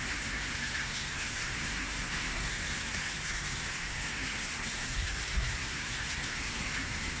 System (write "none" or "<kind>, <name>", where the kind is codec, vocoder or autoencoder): codec, SNAC